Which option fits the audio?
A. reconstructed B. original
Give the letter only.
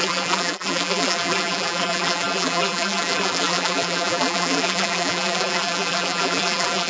A